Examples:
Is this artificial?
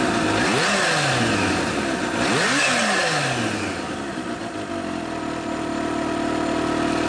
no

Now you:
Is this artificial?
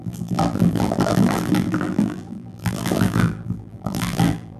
yes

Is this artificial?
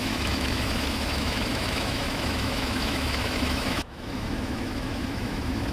yes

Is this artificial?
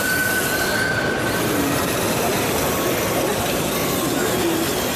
no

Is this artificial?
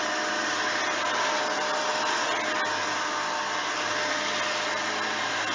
no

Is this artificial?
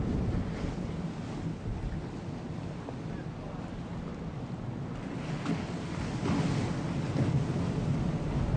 no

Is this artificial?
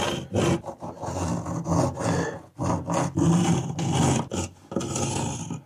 no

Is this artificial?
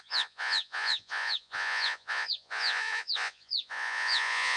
yes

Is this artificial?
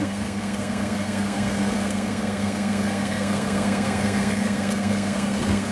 yes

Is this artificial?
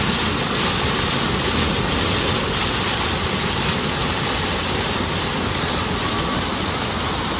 no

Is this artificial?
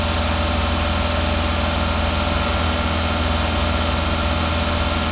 no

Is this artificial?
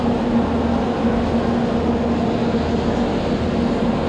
no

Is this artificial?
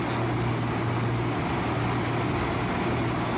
no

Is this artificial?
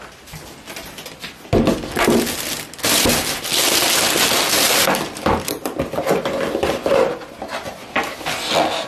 no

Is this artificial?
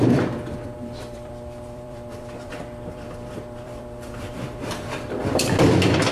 yes